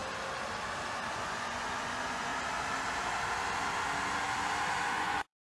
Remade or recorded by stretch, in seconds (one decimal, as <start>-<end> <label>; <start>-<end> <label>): 0.0-1.1 recorded; 1.1-2.3 remade; 2.3-4.9 recorded; 4.9-5.6 remade